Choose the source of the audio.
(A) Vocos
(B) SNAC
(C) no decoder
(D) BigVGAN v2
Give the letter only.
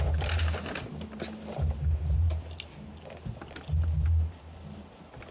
C